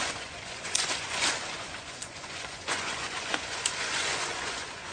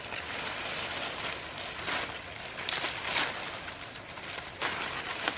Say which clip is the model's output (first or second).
first